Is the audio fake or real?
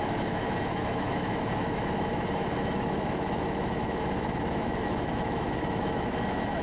fake